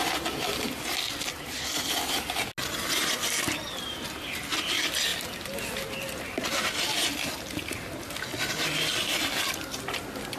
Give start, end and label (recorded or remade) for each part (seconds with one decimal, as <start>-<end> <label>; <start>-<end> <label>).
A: 0.0-10.4 recorded